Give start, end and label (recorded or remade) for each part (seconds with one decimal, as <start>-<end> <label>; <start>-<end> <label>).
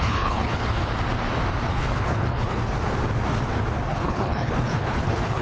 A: 0.0-0.8 remade; 0.8-1.7 recorded; 1.7-2.6 remade; 2.6-3.9 recorded; 3.9-5.4 remade